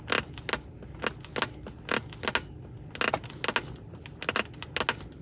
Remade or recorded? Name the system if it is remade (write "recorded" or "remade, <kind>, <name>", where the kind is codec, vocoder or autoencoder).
recorded